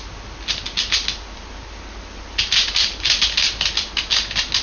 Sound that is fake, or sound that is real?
real